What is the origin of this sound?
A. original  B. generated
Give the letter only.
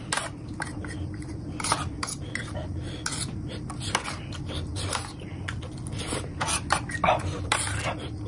A